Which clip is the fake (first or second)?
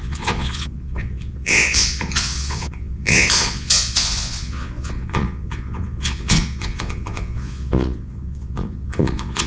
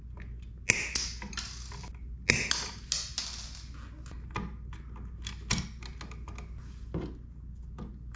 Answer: first